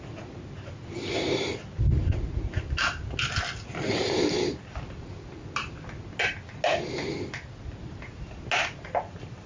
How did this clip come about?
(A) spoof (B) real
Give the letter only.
B